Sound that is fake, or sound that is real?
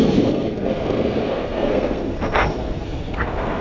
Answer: fake